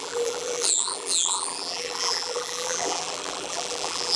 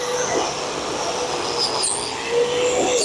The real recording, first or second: second